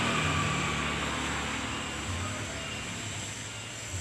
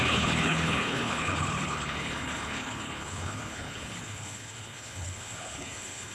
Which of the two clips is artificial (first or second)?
second